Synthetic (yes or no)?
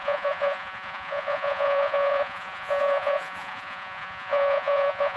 yes